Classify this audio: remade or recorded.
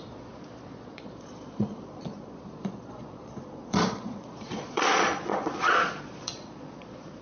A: remade